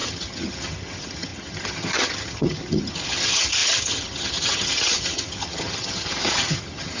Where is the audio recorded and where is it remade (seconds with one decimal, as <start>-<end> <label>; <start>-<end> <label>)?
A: 0.0-7.0 remade